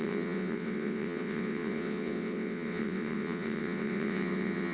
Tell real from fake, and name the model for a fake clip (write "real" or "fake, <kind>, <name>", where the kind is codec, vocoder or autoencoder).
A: fake, vocoder, WaveNeXt